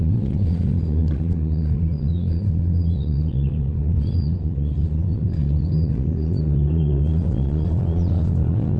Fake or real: fake